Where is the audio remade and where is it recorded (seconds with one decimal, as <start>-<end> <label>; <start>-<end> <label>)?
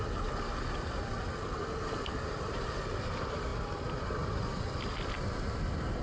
0.0-6.0 recorded